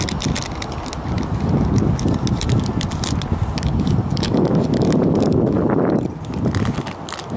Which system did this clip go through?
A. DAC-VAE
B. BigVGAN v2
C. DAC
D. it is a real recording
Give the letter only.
D